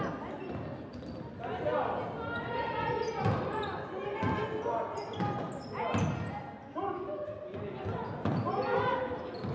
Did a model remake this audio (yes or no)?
no